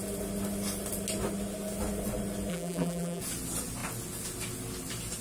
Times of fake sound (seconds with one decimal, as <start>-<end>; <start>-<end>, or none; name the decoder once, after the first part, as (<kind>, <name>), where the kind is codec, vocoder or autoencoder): 2.5-3.2 (vocoder, BigVGAN v2)